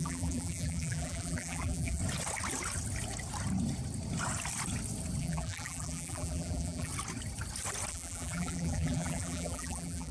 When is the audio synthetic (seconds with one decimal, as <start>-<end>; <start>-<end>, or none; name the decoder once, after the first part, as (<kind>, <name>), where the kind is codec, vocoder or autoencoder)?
0.0-2.0 (vocoder, BigVGAN v2); 5.2-6.9; 7.9-10.1